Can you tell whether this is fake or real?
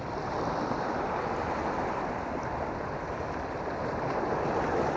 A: real